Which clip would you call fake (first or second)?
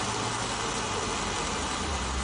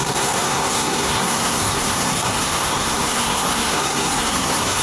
second